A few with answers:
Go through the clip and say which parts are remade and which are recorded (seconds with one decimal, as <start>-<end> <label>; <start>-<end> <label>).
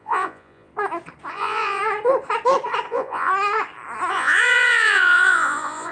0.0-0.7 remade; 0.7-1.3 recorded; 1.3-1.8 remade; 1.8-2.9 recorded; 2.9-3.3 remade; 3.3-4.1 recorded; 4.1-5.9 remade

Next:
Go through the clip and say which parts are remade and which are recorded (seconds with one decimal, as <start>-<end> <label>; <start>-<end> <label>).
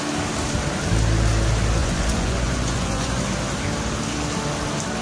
0.0-1.8 recorded; 1.8-3.2 remade; 3.2-5.0 recorded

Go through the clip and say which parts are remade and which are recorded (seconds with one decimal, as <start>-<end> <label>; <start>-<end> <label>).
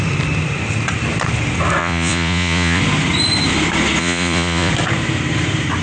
0.0-1.8 recorded; 1.8-2.8 remade; 2.8-4.0 recorded; 4.0-4.7 remade; 4.7-5.8 recorded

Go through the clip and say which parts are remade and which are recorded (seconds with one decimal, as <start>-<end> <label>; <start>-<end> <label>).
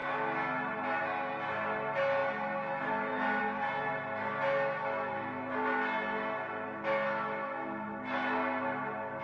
0.0-9.2 recorded